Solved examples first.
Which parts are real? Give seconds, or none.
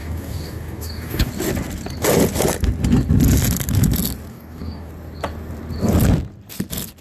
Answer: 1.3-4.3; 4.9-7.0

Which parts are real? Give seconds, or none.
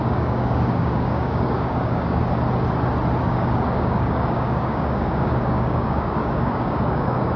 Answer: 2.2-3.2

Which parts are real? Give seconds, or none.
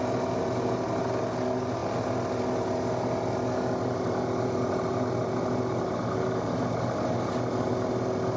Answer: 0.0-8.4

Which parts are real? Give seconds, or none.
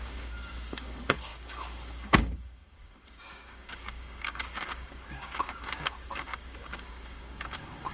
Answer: none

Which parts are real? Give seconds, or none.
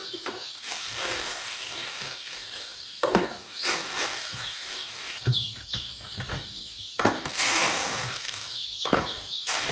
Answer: none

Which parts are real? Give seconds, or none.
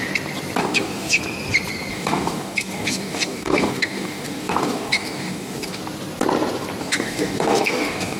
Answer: 0.0-0.6; 1.2-1.9; 5.8-6.8